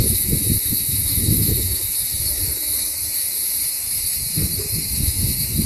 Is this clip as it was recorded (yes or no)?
no